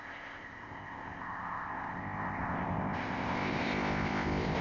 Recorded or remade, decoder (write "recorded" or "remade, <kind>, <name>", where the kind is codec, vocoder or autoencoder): remade, codec, ZipCodec